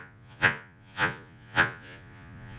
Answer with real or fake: fake